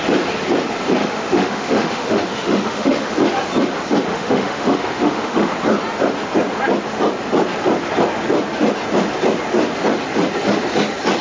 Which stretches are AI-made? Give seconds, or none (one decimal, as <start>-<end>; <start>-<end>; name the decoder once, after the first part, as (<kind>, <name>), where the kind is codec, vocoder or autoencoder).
1.0-3.1 (autoencoder, DAC-VAE); 4.1-5.5